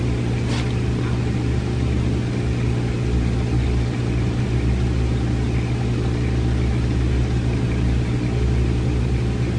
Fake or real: real